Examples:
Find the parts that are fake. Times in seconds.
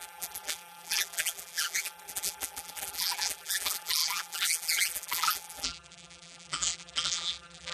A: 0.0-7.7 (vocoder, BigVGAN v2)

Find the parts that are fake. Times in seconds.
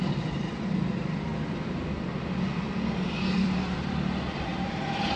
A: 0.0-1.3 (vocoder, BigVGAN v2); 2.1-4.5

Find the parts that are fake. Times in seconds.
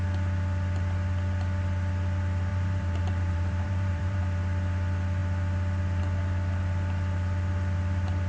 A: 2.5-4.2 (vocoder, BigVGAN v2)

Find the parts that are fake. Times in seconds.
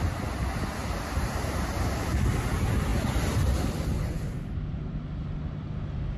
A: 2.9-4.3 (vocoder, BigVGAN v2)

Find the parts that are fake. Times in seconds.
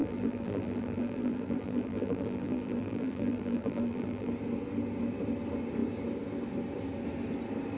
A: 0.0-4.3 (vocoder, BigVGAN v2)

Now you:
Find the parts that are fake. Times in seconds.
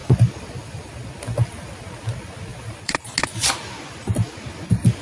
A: 0.0-0.9 (vocoder, BigVGAN v2); 2.5-3.0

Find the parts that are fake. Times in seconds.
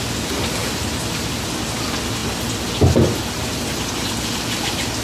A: none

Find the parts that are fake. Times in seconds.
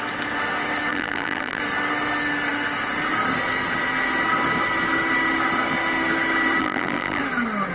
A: 0.9-1.6 (vocoder, BigVGAN v2); 6.6-7.2